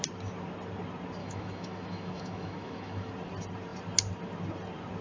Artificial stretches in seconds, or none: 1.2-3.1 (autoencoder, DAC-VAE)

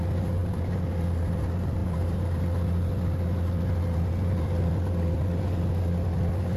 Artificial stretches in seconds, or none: 1.8-2.4 (vocoder, BigVGAN v2)

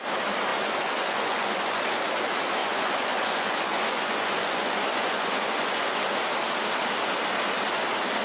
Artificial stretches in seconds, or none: 0.5-1.8 (vocoder, Vocos); 2.6-6.0

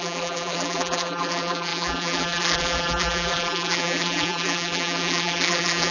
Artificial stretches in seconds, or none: 0.0-5.9 (vocoder, BigVGAN v2)

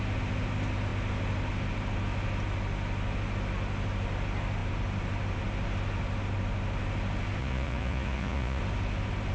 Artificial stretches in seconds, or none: 7.4-8.6 (vocoder, Vocos)

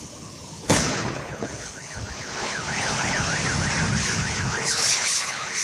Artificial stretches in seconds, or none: 0.0-3.3 (codec, HILCodec); 4.0-5.6